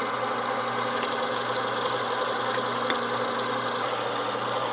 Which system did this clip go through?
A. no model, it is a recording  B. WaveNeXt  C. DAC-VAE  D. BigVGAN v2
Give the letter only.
A